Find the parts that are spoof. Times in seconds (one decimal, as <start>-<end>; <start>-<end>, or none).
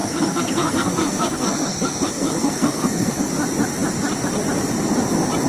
0.0-3.3